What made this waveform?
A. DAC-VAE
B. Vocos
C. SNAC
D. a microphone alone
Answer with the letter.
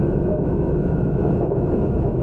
A